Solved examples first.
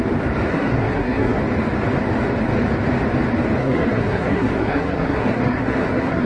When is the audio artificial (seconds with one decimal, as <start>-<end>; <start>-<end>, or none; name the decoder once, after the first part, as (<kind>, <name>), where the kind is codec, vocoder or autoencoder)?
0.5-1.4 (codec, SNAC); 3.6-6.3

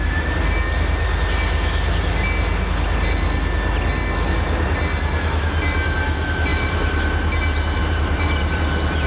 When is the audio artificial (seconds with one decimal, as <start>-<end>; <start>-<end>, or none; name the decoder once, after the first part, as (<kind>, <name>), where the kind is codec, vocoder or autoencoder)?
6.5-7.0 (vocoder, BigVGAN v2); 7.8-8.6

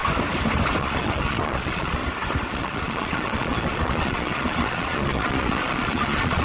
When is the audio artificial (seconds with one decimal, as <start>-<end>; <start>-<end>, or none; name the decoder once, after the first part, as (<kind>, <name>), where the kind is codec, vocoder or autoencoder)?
0.8-2.0 (vocoder, Vocos); 2.5-6.4